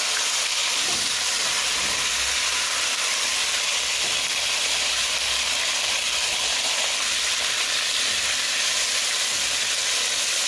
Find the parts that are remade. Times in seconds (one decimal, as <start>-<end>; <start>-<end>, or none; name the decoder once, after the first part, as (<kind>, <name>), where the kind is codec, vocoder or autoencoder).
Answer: 0.6-1.6 (vocoder, BigVGAN v2)